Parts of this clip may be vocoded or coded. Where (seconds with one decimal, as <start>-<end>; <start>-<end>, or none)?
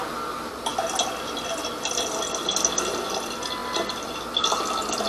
none